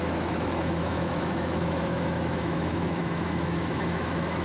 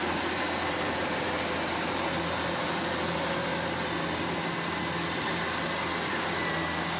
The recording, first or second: second